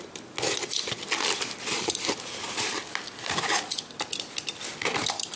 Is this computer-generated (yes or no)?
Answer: no